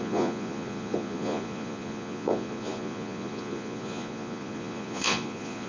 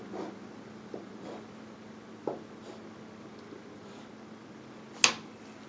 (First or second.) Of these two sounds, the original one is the second